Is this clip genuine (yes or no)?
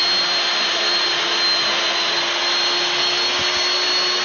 yes